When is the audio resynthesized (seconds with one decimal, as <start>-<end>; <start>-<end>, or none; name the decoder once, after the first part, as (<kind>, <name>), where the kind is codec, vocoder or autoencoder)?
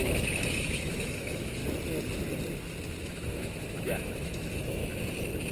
0.0-1.6 (autoencoder, DAC-VAE); 3.0-4.8